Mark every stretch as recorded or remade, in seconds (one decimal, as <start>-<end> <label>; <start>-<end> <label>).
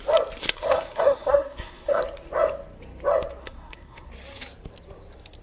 0.0-0.4 recorded; 0.4-2.0 remade; 2.0-3.4 recorded; 3.4-4.1 remade; 4.1-5.4 recorded